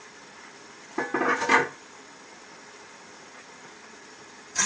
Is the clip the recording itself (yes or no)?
yes